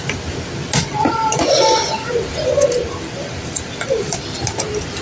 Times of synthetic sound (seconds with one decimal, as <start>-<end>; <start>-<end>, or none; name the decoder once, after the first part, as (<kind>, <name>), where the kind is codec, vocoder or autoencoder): 1.3-2.2 (vocoder, BigVGAN v2); 2.8-4.4